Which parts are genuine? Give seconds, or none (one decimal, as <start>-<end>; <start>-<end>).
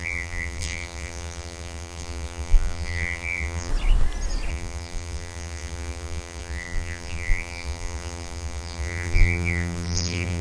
3.7-4.5